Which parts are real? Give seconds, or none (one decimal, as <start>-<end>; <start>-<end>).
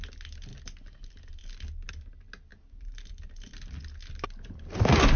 0.0-5.2